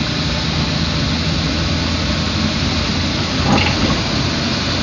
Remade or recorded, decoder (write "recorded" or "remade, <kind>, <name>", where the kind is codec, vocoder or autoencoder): recorded